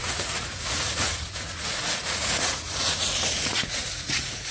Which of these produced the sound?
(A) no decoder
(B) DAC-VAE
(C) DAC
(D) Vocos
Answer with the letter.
D